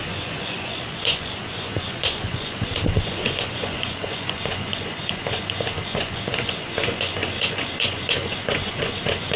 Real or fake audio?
fake